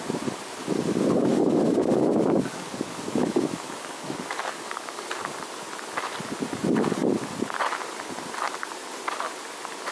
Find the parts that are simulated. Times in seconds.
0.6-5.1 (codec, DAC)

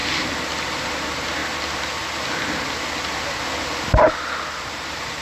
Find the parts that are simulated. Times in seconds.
0.8-1.4 (vocoder, BigVGAN v2); 4.5-5.2

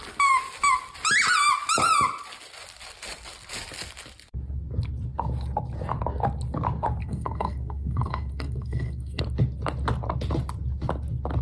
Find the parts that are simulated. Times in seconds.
7.0-9.2 (codec, SNAC)